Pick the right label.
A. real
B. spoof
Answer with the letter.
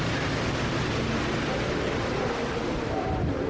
A